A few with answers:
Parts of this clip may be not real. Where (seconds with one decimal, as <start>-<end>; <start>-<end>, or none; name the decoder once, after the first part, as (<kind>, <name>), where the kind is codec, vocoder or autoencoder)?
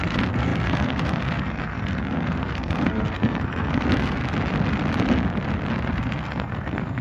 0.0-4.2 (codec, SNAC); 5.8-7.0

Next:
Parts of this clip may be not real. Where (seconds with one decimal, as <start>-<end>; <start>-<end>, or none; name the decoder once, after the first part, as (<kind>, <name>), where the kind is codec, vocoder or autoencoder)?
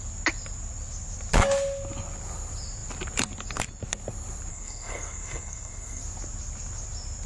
4.5-6.0 (codec, SNAC)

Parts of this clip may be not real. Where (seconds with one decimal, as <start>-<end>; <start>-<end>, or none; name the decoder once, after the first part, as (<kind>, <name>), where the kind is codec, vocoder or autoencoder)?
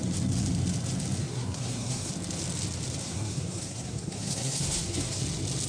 1.2-2.1 (codec, SNAC); 3.0-5.2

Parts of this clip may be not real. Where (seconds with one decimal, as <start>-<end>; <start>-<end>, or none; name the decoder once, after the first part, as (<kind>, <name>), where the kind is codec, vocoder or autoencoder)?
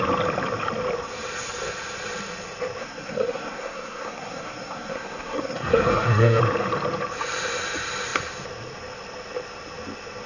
2.8-6.4 (codec, SNAC)